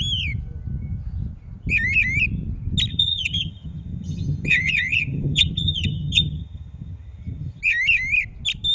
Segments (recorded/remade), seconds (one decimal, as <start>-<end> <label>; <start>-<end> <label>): 0.0-2.9 recorded; 2.9-7.6 remade; 7.6-8.7 recorded